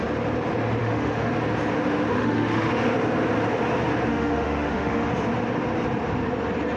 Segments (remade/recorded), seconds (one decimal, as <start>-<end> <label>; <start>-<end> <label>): 0.0-0.8 recorded; 0.8-1.3 remade; 1.3-2.1 recorded; 2.1-2.7 remade; 2.7-4.1 recorded; 4.1-5.1 remade; 5.1-6.8 recorded